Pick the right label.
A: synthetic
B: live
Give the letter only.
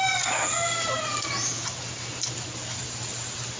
B